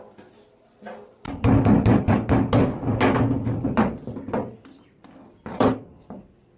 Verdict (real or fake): real